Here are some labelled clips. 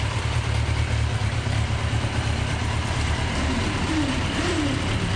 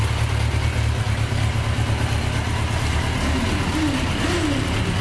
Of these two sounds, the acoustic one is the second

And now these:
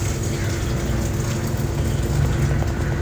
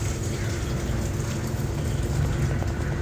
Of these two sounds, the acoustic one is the first